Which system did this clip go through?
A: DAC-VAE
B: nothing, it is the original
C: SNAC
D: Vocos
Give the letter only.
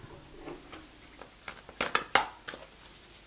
B